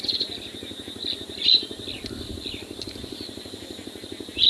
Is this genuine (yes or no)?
yes